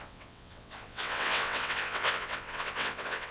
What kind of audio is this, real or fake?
fake